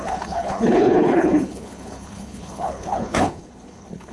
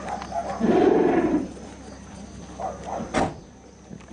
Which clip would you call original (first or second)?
second